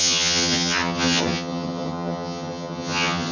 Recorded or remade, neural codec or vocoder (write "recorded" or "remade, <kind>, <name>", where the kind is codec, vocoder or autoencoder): remade, vocoder, HiFi-GAN